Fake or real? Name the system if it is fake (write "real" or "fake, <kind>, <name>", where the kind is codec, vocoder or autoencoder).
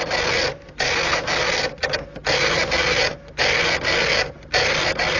real